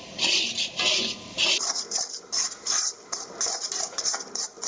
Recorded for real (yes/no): yes